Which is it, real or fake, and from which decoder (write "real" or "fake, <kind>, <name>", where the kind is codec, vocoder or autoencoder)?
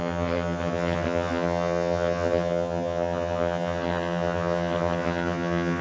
fake, vocoder, HiFi-GAN